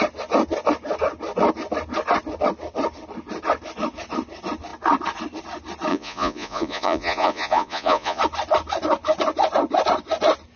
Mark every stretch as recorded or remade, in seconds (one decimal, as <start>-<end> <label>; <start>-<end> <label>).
0.0-5.9 recorded; 5.9-8.2 remade; 8.2-10.6 recorded